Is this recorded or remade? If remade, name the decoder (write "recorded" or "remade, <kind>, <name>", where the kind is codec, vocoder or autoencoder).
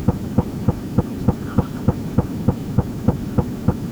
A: remade, autoencoder, DAC-VAE